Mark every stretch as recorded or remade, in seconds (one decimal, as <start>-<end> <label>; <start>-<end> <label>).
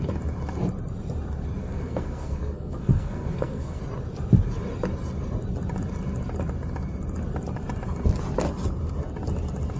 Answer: 0.0-1.6 recorded; 1.6-3.8 remade; 3.8-9.8 recorded